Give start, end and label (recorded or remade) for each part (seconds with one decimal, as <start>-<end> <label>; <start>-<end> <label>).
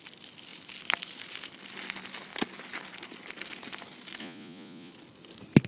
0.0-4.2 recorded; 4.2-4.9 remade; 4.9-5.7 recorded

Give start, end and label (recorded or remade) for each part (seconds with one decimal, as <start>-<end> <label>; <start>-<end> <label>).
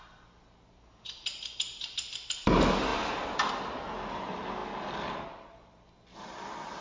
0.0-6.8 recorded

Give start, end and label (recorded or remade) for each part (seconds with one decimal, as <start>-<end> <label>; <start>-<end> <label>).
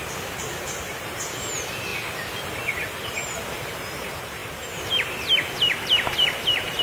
0.0-1.9 remade; 1.9-3.5 recorded; 3.5-6.8 remade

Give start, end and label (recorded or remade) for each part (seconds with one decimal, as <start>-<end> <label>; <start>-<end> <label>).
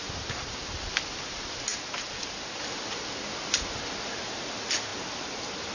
0.0-5.7 recorded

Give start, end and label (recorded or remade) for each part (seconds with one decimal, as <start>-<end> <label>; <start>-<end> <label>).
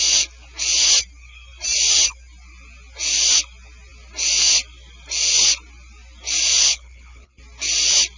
0.0-6.6 recorded; 6.6-7.3 remade; 7.3-8.2 recorded